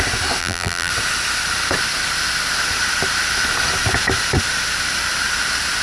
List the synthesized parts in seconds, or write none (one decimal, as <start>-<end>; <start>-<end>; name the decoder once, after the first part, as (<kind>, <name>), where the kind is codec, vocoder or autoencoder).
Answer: 0.4-0.9 (vocoder, BigVGAN v2)

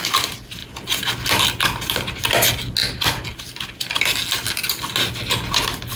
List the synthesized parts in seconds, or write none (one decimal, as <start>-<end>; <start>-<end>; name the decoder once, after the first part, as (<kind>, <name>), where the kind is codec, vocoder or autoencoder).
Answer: 2.8-4.2 (vocoder, BigVGAN v2)

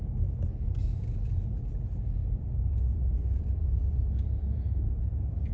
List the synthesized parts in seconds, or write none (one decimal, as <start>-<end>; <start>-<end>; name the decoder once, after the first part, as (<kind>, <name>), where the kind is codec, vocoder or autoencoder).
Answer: 2.2-5.5 (vocoder, BigVGAN v2)

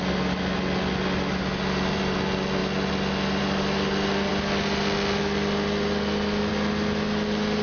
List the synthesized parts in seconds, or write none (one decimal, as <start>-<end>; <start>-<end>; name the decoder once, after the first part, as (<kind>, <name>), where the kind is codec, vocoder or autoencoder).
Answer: 1.4-2.0 (vocoder, BigVGAN v2)

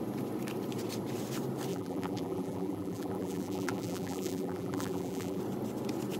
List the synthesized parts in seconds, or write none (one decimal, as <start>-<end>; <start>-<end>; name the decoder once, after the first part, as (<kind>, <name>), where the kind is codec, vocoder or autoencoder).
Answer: 1.7-5.4 (vocoder, BigVGAN v2)

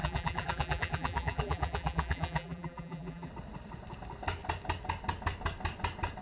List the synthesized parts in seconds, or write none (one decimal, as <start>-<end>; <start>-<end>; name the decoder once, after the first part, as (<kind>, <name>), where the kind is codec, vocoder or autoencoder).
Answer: 0.0-3.3 (vocoder, BigVGAN v2)